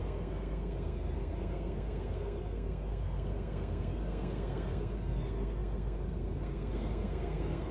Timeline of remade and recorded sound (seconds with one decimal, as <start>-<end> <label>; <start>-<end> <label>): 0.0-7.7 remade